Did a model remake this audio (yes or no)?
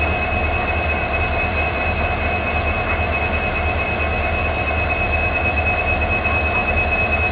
no